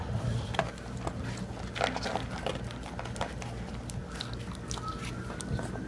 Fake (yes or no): no